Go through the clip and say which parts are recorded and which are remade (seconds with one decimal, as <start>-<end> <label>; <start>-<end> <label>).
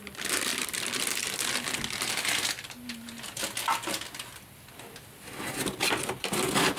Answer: 0.0-0.5 recorded; 0.5-3.4 remade; 3.4-6.8 recorded